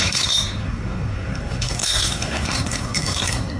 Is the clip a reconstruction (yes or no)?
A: yes